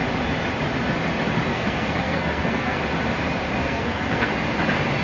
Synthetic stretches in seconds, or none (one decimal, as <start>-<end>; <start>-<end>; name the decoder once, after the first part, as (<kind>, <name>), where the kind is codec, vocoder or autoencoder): 1.5-2.8 (codec, SNAC); 3.6-4.3